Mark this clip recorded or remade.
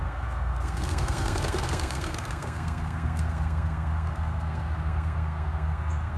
remade